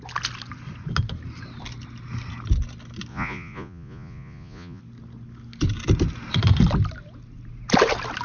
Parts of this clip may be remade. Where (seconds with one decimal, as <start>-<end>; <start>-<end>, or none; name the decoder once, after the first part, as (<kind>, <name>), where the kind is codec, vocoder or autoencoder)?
3.1-4.8 (vocoder, Vocos)